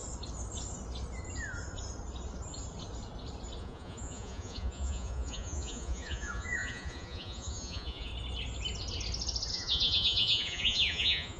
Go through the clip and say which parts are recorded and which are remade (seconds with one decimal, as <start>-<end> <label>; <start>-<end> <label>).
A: 0.0-3.6 recorded; 3.6-8.1 remade; 8.1-9.5 recorded; 9.5-11.4 remade